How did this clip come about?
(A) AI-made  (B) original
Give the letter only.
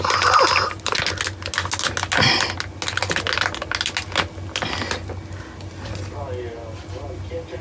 B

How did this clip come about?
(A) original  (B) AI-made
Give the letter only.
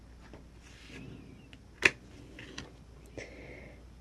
A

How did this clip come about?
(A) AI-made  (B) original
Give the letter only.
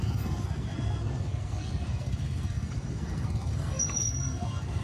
A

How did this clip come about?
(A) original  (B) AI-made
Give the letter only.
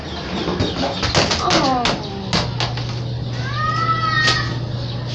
A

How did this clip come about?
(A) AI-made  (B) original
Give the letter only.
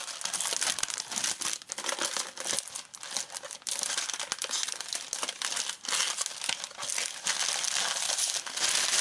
B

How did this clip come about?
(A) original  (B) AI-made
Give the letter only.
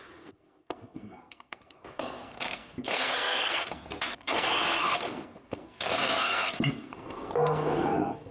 B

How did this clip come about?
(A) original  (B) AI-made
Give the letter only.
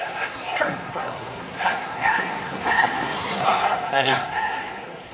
B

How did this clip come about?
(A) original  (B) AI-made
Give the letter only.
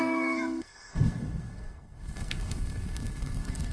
B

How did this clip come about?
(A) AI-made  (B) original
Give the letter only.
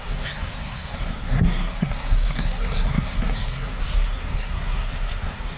A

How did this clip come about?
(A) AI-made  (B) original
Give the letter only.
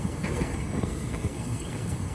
A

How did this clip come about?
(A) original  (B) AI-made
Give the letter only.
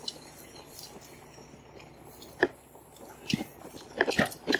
A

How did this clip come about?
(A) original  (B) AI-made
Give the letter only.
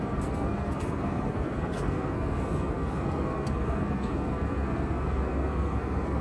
B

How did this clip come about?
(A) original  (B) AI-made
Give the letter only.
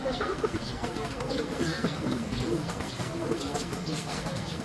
B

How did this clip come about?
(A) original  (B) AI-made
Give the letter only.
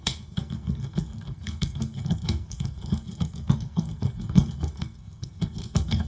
B